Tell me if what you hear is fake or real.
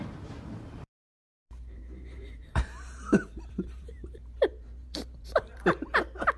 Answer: fake